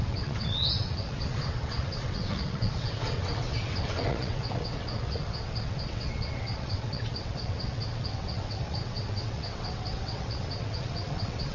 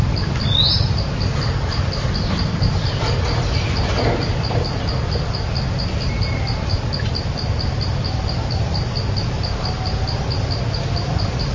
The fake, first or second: first